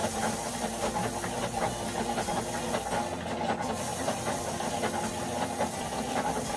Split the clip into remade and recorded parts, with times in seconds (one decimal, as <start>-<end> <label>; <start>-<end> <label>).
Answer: 0.0-6.6 recorded